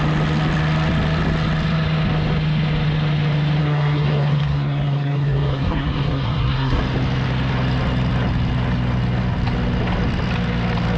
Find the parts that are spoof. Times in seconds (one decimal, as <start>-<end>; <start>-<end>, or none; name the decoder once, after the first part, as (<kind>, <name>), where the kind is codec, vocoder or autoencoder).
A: 3.6-6.8 (codec, SNAC)